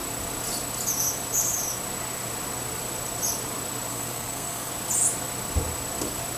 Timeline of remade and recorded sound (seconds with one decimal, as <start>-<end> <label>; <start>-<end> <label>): 0.0-3.9 recorded; 3.9-4.7 remade; 4.7-6.4 recorded